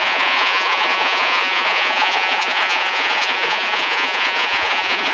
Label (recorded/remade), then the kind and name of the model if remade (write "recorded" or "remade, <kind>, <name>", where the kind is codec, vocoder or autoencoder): remade, vocoder, Vocos